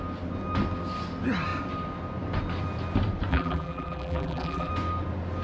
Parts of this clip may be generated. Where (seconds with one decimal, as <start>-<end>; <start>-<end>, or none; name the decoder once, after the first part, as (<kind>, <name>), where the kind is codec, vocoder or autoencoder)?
3.3-4.7 (vocoder, BigVGAN v2)